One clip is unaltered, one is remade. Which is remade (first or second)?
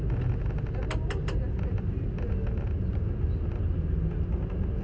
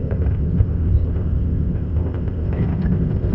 second